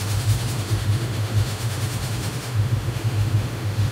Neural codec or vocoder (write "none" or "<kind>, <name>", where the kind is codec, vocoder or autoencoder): autoencoder, DAC-VAE